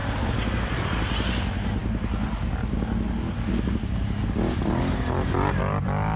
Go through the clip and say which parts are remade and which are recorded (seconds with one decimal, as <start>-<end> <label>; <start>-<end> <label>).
0.0-6.2 recorded